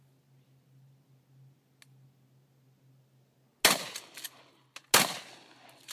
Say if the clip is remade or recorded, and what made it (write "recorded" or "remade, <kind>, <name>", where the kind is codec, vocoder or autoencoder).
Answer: recorded